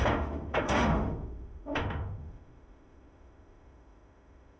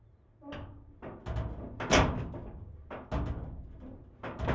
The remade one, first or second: first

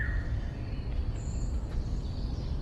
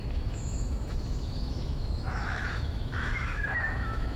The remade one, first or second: second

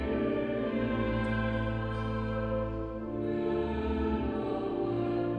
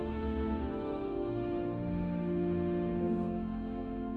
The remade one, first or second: second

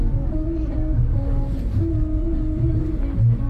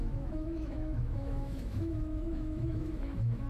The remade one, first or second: second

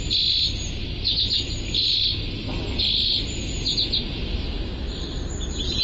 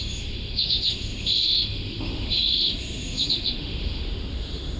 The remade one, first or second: second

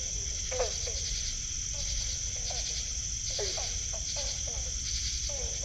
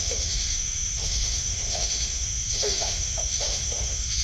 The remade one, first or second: second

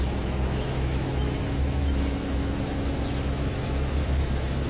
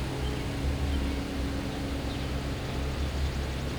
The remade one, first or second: first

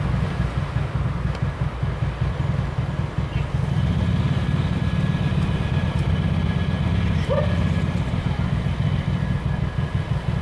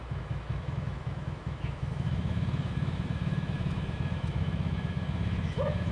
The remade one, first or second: second